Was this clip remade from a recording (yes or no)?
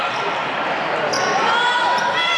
no